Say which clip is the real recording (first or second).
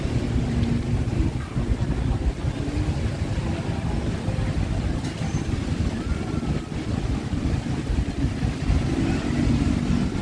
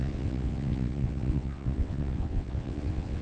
first